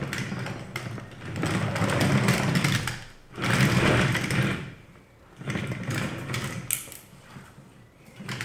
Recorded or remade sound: recorded